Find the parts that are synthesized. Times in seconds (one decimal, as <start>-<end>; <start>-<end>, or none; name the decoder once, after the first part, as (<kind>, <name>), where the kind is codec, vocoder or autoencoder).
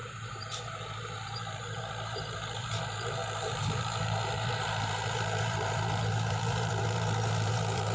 0.0-7.9 (vocoder, BigVGAN v2)